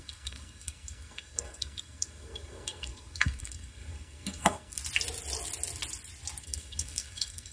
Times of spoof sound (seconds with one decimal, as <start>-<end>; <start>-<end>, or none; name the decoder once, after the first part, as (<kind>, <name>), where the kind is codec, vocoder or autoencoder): 0.0-4.8 (codec, SNAC); 6.4-7.5